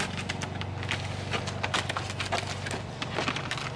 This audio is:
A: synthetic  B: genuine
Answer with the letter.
B